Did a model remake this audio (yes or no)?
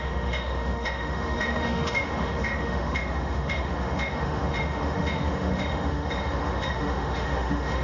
yes